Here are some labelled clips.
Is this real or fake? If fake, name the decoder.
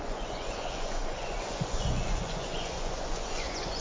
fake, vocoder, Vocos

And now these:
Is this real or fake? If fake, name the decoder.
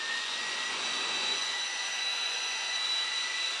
fake, vocoder, Vocos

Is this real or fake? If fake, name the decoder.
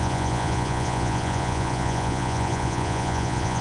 fake, vocoder, Vocos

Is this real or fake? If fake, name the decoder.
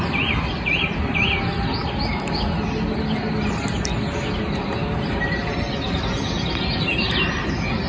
real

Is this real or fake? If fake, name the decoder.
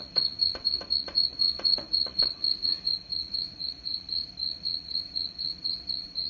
fake, vocoder, Vocos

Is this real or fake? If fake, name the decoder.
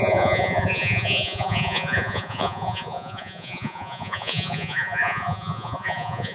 fake, vocoder, Vocos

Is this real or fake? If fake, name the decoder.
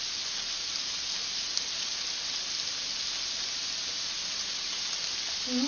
real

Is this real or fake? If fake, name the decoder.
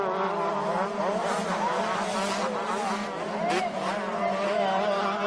real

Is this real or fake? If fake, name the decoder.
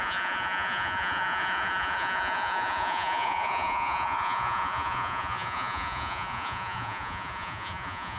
fake, vocoder, Vocos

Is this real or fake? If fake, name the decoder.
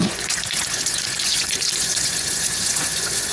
fake, vocoder, Vocos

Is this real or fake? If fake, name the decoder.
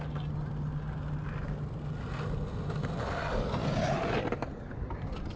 real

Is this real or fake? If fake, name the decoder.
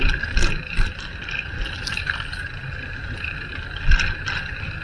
real